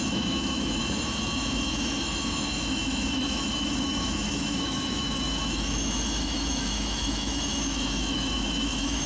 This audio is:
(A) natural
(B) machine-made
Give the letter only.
B